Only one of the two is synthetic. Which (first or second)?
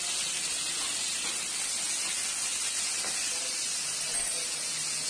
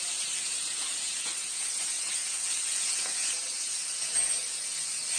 second